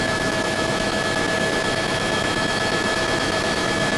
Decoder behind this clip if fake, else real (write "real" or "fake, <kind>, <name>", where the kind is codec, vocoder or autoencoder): fake, autoencoder, DAC-VAE